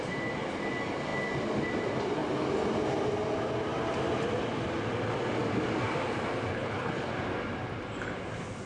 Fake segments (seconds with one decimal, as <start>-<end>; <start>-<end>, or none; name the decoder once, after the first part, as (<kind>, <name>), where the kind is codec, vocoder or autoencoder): 6.5-7.1 (codec, HILCodec)